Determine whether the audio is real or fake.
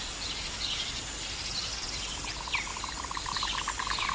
fake